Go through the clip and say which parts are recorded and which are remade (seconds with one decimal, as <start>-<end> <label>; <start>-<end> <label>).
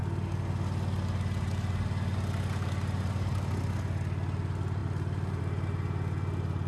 0.0-6.7 recorded